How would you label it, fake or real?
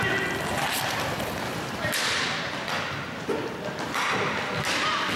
real